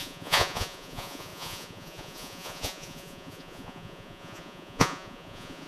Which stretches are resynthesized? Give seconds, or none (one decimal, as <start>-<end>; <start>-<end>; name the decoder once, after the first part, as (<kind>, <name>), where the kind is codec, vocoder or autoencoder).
0.0-5.7 (vocoder, Vocos)